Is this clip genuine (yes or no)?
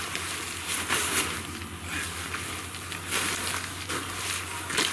yes